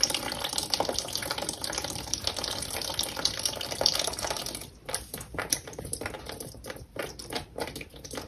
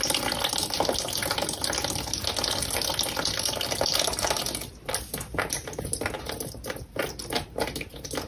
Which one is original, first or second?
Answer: second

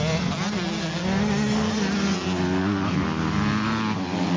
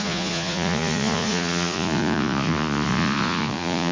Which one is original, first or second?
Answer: first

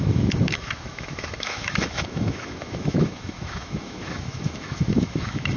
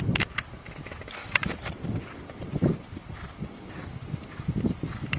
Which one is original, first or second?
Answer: second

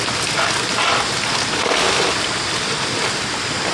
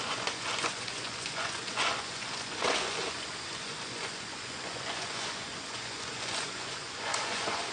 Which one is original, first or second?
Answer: first